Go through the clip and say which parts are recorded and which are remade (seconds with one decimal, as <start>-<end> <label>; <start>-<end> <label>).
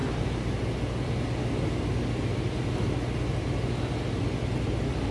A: 0.0-5.1 recorded